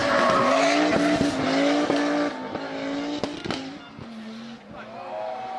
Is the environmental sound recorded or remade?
recorded